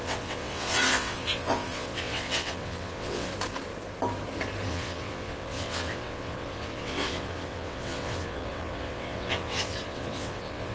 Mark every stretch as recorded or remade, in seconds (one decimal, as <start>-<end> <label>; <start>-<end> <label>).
0.0-3.3 remade; 3.3-4.7 recorded; 4.7-10.7 remade

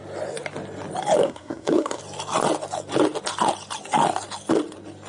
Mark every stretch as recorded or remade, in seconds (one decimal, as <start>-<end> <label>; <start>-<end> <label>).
0.0-1.2 recorded; 1.2-2.0 remade; 2.0-5.1 recorded

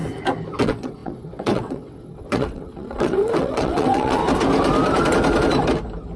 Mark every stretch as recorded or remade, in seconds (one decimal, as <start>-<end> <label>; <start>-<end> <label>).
0.0-0.6 recorded; 0.6-4.2 remade; 4.2-6.2 recorded

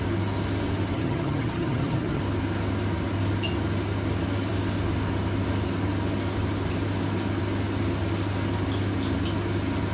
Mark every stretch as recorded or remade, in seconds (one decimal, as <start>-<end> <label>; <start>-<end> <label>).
0.0-0.9 recorded; 0.9-2.2 remade; 2.2-9.9 recorded

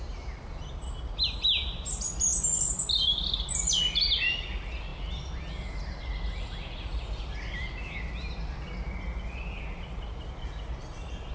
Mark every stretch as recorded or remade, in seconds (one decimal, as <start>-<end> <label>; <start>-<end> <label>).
0.0-11.3 recorded

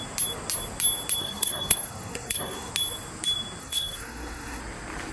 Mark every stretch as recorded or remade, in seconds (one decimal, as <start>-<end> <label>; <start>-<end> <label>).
0.0-1.2 recorded; 1.2-2.7 remade; 2.7-3.6 recorded; 3.6-4.6 remade; 4.6-5.1 recorded

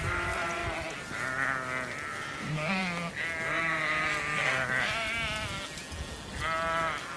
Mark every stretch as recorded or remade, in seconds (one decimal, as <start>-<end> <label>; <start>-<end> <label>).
0.0-0.6 remade; 0.6-2.4 recorded; 2.4-2.8 remade; 2.8-7.2 recorded

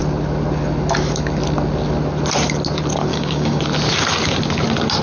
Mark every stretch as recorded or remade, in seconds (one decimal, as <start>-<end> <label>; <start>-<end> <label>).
0.0-3.1 recorded; 3.1-3.6 remade; 3.6-5.0 recorded